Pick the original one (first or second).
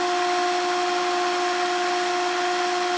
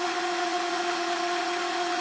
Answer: first